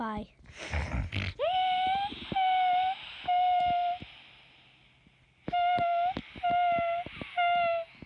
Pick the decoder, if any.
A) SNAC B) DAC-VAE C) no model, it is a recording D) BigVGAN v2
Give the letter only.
C